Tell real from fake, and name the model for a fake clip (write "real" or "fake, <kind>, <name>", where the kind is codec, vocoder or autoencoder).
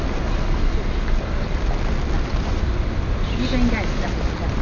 real